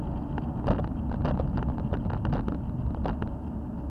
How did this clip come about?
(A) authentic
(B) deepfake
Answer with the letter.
A